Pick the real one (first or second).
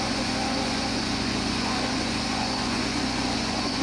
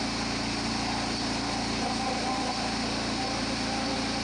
second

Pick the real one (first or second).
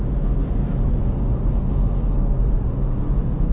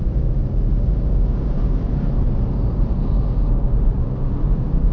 first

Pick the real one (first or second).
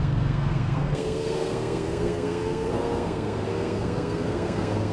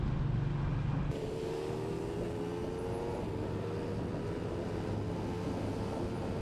second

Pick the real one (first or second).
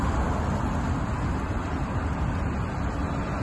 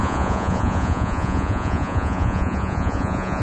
first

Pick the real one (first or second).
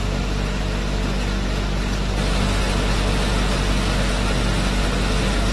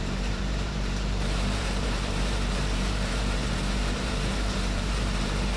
first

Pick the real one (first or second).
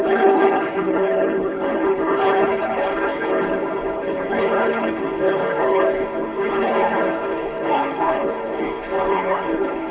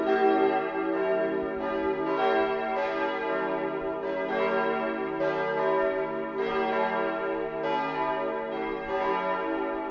second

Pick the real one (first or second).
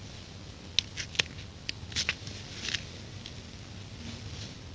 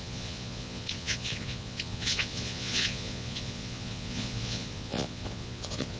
first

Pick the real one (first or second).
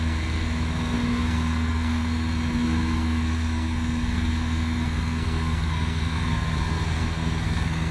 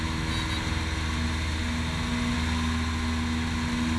second